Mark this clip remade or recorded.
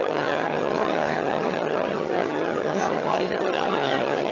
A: remade